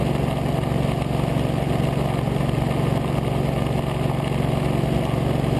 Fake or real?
real